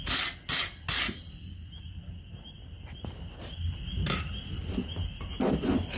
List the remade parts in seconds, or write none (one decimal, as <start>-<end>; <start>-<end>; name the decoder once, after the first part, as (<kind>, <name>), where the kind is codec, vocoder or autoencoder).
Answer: none